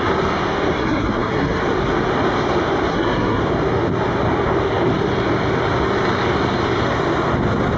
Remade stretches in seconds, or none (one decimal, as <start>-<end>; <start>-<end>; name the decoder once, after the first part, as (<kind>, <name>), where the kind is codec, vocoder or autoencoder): 0.8-1.6 (codec, SNAC); 2.9-3.4